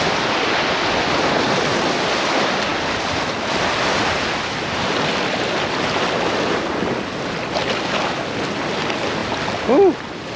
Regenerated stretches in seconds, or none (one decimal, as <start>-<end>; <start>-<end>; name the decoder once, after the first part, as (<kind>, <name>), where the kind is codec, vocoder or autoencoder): none

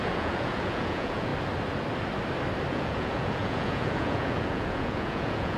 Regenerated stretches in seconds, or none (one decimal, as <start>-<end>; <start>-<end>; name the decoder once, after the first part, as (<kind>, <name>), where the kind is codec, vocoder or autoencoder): 0.0-1.3 (vocoder, Vocos); 2.7-5.6

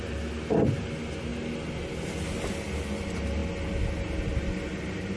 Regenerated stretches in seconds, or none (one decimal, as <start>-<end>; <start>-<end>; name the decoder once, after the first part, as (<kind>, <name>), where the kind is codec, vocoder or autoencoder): none

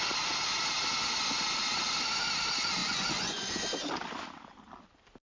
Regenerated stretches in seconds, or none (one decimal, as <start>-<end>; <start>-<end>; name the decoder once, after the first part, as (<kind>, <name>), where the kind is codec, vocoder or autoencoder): 2.8-3.6 (vocoder, Vocos)

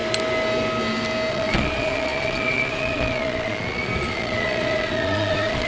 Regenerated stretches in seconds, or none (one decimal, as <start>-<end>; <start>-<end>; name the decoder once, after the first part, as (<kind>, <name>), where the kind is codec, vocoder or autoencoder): 1.3-5.7 (vocoder, Vocos)

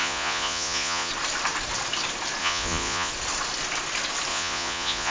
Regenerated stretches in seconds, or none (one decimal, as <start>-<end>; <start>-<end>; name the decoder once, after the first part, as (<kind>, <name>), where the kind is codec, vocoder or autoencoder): 0.0-1.1 (vocoder, Vocos); 2.4-3.1; 4.3-5.1